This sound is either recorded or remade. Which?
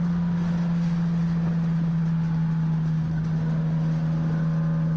recorded